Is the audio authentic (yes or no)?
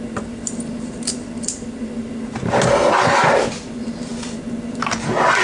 yes